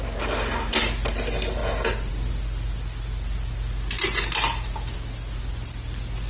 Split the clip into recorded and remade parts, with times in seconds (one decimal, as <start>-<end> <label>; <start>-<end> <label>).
0.0-6.3 recorded